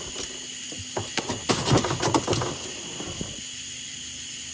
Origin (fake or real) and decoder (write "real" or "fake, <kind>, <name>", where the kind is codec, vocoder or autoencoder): real